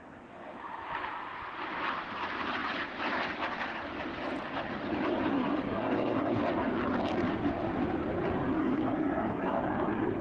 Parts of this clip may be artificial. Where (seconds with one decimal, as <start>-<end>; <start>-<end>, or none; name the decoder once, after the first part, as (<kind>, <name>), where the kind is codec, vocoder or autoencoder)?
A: 5.3-6.4 (codec, SNAC); 8.6-9.6